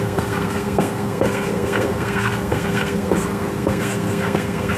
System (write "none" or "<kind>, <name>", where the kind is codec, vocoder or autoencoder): codec, SNAC